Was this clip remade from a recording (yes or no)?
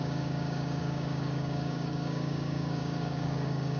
yes